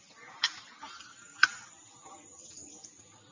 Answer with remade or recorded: recorded